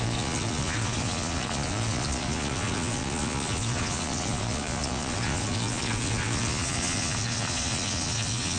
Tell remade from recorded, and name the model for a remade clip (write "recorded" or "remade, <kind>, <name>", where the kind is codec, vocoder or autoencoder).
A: remade, vocoder, Vocos